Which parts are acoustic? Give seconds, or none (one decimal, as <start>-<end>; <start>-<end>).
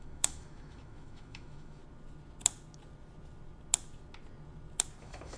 1.8-5.0